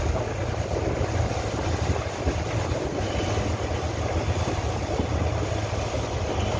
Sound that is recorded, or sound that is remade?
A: recorded